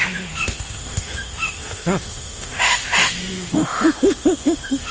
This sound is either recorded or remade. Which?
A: remade